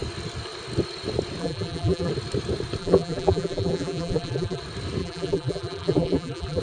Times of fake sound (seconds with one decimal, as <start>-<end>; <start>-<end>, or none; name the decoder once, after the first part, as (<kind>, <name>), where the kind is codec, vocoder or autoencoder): 1.4-2.1 (vocoder, BigVGAN v2); 2.8-4.6; 5.0-6.6